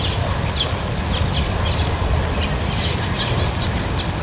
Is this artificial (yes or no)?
no